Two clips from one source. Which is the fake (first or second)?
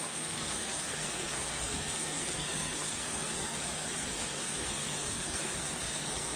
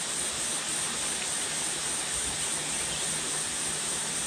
first